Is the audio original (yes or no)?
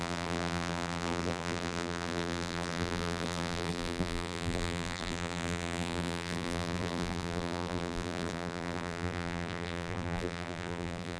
no